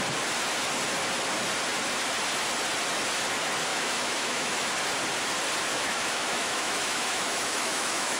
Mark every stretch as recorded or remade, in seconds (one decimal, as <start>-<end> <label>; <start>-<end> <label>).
0.0-3.7 recorded; 3.7-4.7 remade; 4.7-5.7 recorded; 5.7-8.2 remade